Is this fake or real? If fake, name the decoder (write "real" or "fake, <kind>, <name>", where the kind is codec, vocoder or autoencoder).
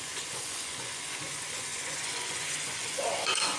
fake, vocoder, Vocos